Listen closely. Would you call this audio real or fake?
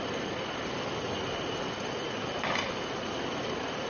real